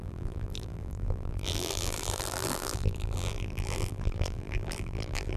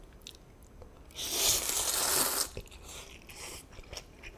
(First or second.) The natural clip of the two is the second